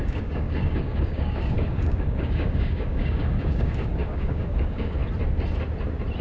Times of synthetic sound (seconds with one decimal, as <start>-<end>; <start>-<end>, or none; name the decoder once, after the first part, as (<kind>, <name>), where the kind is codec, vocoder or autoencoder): 0.0-5.0 (codec, DAC)